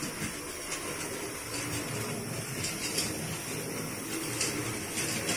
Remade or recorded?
recorded